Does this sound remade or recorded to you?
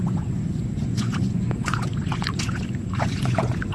remade